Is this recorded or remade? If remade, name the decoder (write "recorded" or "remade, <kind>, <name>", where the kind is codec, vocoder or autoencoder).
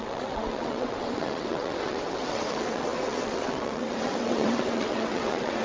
remade, vocoder, WaveNeXt